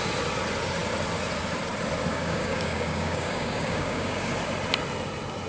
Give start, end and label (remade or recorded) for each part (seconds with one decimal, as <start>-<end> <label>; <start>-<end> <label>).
0.0-2.1 recorded; 2.1-4.3 remade; 4.3-5.5 recorded